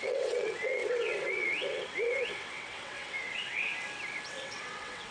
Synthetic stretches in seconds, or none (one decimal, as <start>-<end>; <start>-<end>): 0.0-3.7; 4.3-5.1